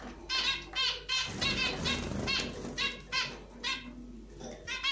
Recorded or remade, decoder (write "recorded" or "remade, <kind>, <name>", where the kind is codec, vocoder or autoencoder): recorded